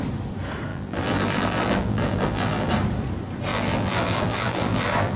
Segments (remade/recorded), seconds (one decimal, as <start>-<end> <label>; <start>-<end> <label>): 0.0-0.7 recorded; 0.7-2.7 remade; 2.7-3.5 recorded; 3.5-5.2 remade